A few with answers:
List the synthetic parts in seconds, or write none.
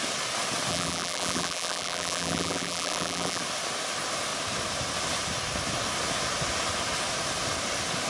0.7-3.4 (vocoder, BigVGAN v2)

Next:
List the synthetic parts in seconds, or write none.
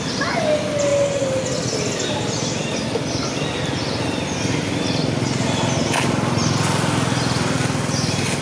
none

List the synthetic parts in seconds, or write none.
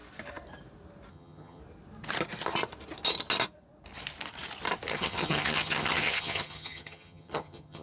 1.1-1.6 (vocoder, HiFi-GAN); 4.9-7.8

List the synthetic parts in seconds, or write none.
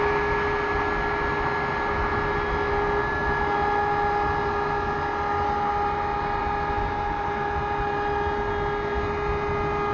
none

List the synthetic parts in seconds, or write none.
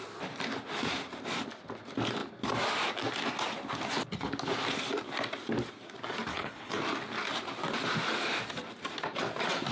6.3-6.8 (codec, HILCodec)